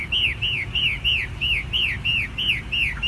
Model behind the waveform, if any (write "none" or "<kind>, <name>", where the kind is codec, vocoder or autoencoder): none